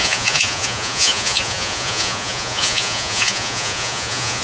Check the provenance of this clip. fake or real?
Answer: fake